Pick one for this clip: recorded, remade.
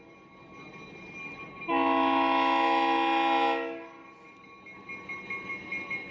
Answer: recorded